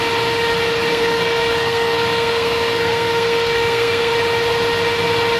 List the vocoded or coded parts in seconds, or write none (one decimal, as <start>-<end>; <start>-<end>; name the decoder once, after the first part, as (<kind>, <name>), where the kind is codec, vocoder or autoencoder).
0.9-4.1 (codec, SNAC)